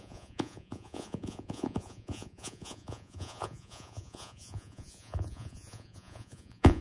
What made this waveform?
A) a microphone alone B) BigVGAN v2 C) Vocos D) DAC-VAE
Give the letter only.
C